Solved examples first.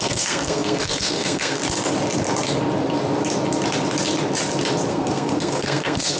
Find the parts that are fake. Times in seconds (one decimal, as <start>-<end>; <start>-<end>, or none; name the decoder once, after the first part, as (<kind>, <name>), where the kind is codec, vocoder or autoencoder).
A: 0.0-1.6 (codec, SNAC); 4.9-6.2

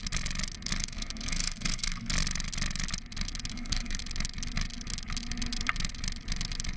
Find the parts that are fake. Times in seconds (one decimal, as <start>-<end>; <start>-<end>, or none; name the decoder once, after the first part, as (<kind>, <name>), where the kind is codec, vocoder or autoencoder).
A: 0.8-2.1 (codec, SNAC); 3.5-4.0

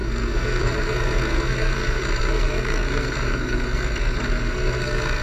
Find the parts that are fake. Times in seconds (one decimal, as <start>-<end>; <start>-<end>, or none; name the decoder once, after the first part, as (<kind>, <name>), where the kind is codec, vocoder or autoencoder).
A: 0.0-5.2 (codec, SNAC)

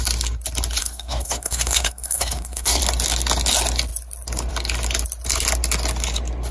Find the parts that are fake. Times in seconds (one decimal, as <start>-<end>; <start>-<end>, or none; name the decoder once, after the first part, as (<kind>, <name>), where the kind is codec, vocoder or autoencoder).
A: 0.8-2.8 (codec, SNAC)

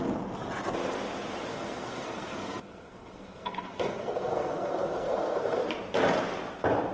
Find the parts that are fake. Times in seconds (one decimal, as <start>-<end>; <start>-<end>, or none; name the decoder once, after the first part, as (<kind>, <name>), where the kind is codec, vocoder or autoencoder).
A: 1.5-5.6 (codec, SNAC)